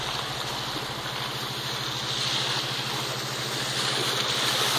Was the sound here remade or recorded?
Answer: recorded